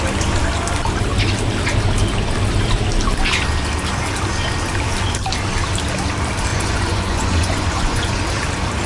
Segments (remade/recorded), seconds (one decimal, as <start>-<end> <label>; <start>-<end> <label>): 0.0-6.5 recorded; 6.5-8.2 remade; 8.2-8.9 recorded